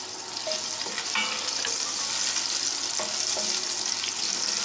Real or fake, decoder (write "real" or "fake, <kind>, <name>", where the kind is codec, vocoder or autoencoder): real